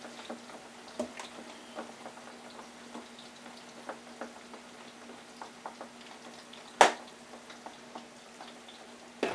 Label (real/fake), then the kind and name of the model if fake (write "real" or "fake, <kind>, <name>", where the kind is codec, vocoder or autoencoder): real